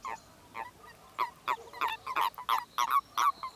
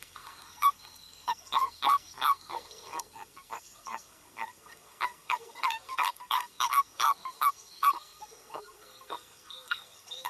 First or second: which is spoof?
second